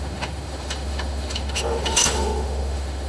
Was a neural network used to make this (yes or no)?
yes